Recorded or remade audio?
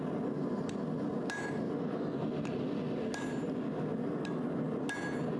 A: recorded